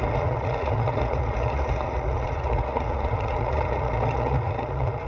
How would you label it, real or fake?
fake